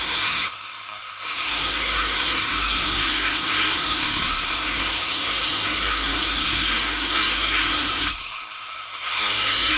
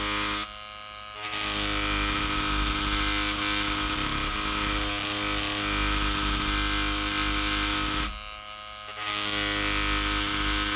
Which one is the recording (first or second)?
second